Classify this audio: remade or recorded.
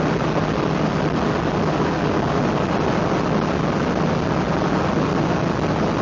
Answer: recorded